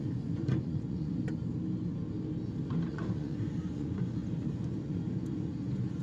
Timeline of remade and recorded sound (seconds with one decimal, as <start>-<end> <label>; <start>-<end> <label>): 0.0-1.2 remade; 1.2-2.9 recorded; 2.9-6.0 remade